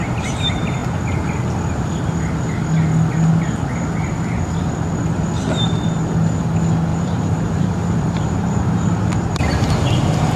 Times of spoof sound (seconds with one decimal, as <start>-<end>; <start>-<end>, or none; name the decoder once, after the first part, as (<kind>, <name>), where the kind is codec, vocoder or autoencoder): 6.9-9.4 (vocoder, BigVGAN v2)